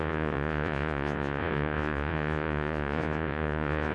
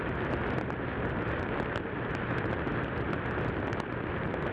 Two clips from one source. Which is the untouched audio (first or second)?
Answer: second